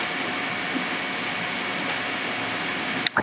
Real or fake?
real